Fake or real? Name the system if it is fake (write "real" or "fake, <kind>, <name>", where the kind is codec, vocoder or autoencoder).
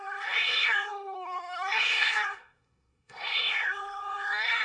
fake, codec, SNAC